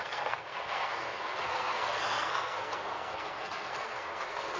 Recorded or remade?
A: remade